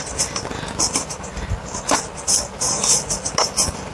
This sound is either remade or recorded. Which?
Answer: recorded